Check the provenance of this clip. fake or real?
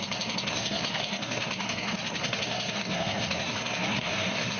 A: fake